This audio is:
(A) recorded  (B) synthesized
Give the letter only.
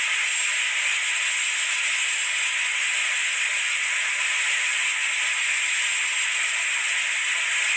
A